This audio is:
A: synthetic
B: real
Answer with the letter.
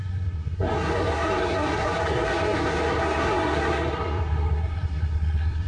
A